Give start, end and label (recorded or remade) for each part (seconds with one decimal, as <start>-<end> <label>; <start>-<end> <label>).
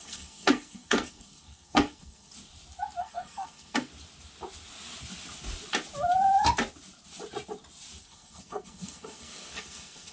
0.0-2.3 remade; 2.3-3.0 recorded; 3.0-3.9 remade; 3.9-8.0 recorded; 8.0-10.1 remade